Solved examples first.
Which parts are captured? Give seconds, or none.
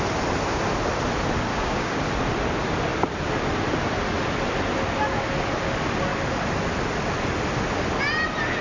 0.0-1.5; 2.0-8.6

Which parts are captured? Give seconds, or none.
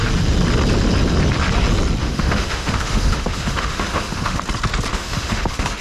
0.0-2.0; 4.4-4.9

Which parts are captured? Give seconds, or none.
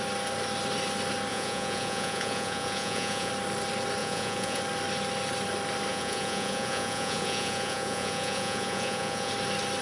0.0-1.3; 3.3-4.0; 4.6-5.9; 9.3-9.8